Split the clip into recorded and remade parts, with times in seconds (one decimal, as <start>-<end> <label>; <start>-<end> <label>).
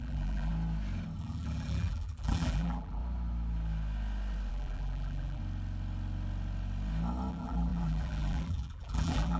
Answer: 0.0-0.5 remade; 0.5-1.2 recorded; 1.2-3.0 remade; 3.0-4.5 recorded; 4.5-5.4 remade; 5.4-7.3 recorded; 7.3-9.4 remade